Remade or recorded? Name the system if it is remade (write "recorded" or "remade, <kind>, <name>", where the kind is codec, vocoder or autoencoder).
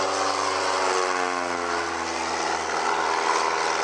recorded